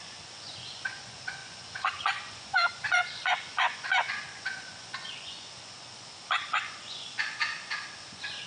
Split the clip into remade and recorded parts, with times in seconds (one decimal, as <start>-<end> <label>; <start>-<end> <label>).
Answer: 0.0-8.5 remade